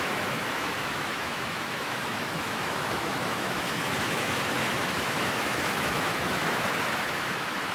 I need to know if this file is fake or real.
fake